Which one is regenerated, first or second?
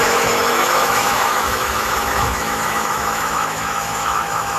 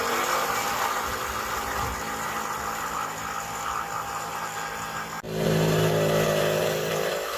first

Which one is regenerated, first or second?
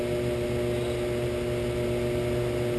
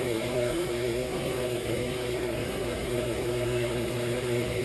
second